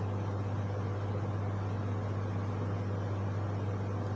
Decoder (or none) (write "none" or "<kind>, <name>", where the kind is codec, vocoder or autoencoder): none